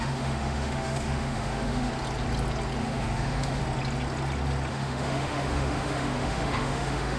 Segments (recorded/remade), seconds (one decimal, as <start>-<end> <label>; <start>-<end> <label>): 0.0-1.9 remade; 1.9-2.8 recorded; 2.8-3.6 remade; 3.6-4.7 recorded; 4.7-7.2 remade